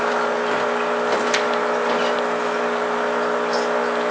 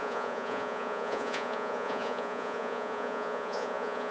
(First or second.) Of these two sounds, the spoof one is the second